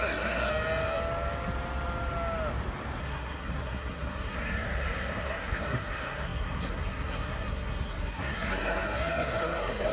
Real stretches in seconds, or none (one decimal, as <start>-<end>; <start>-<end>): 0.5-3.0